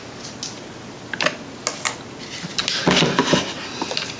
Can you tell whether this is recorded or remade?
recorded